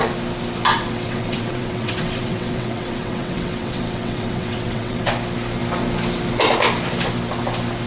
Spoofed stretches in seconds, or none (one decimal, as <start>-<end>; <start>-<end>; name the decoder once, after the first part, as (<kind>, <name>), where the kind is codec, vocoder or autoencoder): 0.7-5.1 (vocoder, WaveNeXt)